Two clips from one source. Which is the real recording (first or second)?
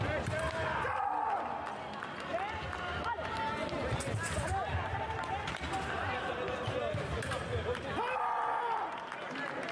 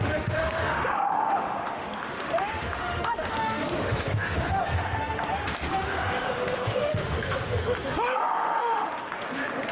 first